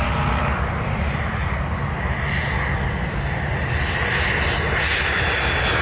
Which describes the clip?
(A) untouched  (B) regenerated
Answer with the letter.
A